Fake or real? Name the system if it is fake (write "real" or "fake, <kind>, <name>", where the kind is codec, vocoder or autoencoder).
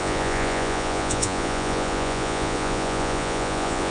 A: fake, vocoder, Vocos